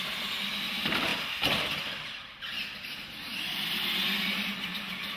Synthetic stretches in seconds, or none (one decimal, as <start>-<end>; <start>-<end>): none